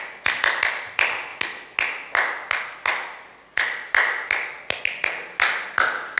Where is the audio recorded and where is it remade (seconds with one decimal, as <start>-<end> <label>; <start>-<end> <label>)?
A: 0.0-6.2 recorded